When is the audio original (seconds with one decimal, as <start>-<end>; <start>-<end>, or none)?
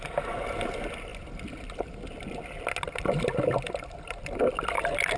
0.0-5.2